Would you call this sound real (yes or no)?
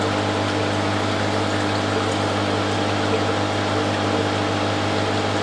yes